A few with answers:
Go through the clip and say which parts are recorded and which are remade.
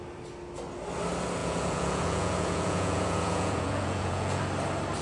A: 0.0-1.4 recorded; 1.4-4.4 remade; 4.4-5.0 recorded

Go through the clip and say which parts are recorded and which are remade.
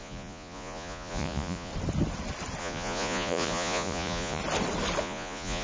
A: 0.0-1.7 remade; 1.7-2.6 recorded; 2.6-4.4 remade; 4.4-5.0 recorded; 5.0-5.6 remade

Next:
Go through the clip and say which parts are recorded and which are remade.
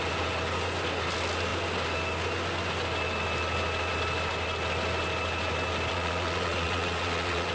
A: 0.0-5.9 recorded; 5.9-7.5 remade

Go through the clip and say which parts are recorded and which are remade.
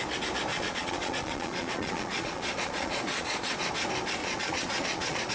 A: 0.0-0.5 recorded; 0.5-3.7 remade; 3.7-4.2 recorded; 4.2-5.3 remade